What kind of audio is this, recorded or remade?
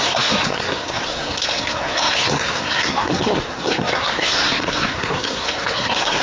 remade